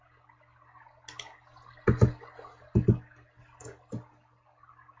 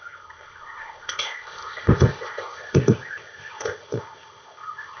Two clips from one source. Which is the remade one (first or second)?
second